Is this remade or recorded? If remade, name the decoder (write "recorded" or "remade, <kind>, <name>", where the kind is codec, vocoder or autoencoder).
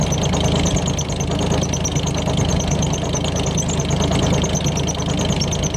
recorded